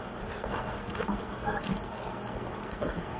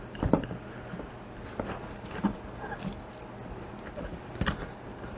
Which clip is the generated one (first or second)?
first